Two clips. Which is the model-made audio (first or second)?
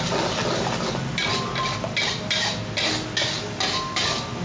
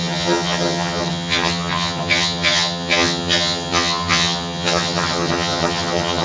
second